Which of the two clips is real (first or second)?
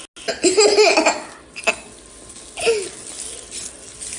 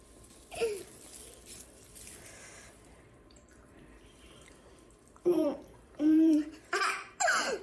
first